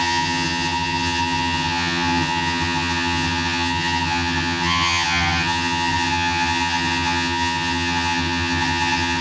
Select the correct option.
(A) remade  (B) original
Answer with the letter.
A